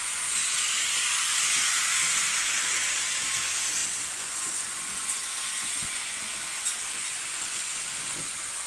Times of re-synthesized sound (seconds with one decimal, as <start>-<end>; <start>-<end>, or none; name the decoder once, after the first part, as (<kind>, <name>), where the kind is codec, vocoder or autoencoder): 0.0-0.4 (vocoder, Vocos); 3.4-8.7